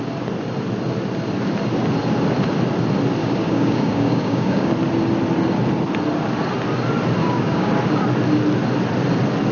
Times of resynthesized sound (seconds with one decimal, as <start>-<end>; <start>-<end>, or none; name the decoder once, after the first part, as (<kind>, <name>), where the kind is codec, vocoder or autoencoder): 3.2-4.7 (codec, DAC); 7.2-7.7